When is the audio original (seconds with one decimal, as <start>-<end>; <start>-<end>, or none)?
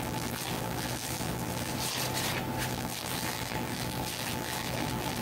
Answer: 1.7-2.7